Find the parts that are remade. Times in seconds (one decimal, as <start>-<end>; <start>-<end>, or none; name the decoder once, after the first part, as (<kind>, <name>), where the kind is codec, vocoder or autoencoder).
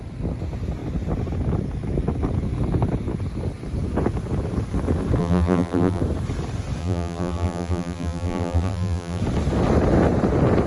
5.2-6.0 (vocoder, BigVGAN v2); 6.8-9.2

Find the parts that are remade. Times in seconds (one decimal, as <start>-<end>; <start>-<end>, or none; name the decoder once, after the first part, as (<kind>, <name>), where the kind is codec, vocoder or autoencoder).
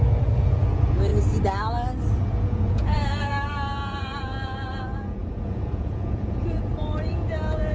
0.0-1.1 (vocoder, Vocos); 2.1-7.7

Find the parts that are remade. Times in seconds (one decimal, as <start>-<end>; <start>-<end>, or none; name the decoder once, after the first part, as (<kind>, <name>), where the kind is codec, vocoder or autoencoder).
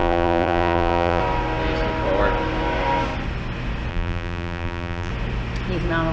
0.0-1.2 (vocoder, BigVGAN v2); 3.9-5.1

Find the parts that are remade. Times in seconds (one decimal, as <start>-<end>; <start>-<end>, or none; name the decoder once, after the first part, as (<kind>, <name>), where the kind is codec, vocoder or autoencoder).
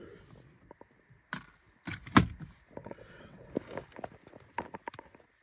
2.8-3.5 (vocoder, WaveNeXt)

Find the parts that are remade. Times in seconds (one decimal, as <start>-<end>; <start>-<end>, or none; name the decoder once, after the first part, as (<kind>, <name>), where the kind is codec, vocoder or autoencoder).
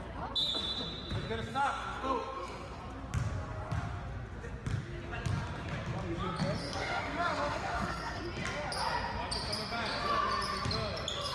1.5-2.8 (codec, SNAC); 6.6-8.2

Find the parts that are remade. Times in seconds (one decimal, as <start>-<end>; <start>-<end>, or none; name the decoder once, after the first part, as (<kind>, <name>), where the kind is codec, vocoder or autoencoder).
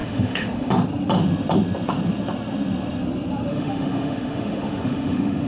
0.0-0.7 (autoencoder, DAC-VAE); 3.5-5.5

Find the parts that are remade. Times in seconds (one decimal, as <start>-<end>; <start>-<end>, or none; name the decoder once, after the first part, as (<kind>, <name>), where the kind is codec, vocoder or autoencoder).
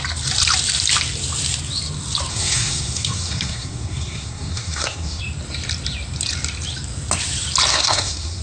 2.3-5.2 (codec, SNAC); 7.7-8.4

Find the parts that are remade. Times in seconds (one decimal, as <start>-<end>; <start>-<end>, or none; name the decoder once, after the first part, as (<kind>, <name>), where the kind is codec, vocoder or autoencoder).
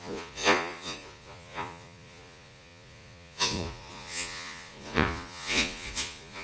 0.0-6.4 (vocoder, Vocos)